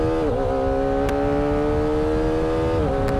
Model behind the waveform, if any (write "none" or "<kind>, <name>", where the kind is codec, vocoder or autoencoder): none